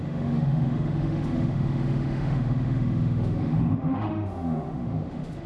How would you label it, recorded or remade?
remade